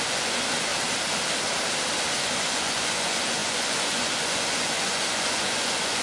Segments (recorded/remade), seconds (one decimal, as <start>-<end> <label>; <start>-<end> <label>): 0.0-0.7 remade; 0.7-2.2 recorded; 2.2-6.0 remade